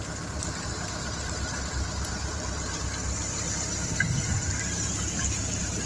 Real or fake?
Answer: fake